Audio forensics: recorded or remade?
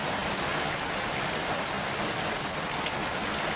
recorded